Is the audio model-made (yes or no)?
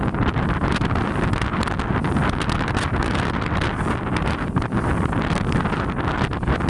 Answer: no